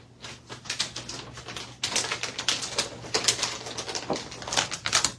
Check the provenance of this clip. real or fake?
real